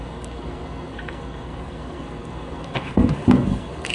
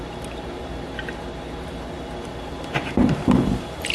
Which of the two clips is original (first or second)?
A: second